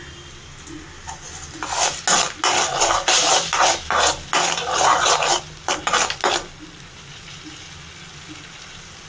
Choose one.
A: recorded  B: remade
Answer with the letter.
A